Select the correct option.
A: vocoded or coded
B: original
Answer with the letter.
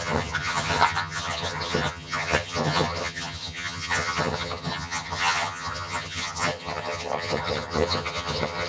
A